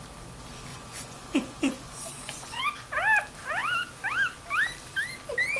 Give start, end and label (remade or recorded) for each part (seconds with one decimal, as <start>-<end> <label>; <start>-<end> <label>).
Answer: 0.0-0.7 recorded; 0.7-2.6 remade; 2.6-5.6 recorded

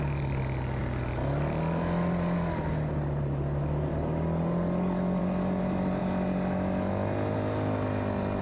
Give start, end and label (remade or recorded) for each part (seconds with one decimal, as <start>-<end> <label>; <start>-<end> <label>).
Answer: 0.0-8.4 recorded

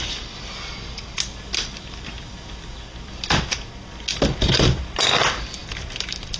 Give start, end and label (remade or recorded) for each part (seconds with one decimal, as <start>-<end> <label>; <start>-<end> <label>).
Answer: 0.0-6.4 recorded